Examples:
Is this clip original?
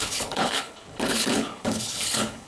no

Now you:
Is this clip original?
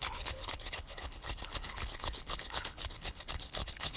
no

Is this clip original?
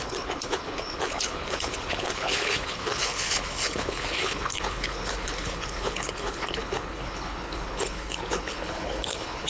no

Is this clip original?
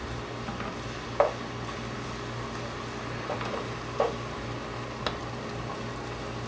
yes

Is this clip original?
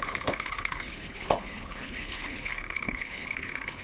no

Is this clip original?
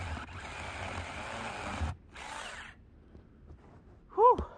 yes